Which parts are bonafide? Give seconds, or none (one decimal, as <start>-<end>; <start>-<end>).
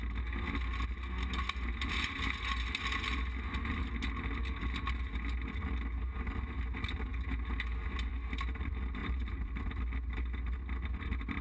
0.0-9.0; 9.6-11.4